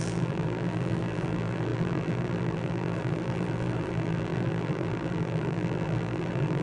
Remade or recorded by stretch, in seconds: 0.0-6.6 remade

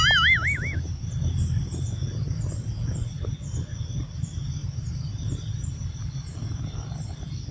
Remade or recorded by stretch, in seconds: 0.0-2.0 recorded; 2.0-2.5 remade; 2.5-4.6 recorded; 4.6-6.0 remade; 6.0-7.5 recorded